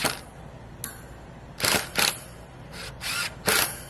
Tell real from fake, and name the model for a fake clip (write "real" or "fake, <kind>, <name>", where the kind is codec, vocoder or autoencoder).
real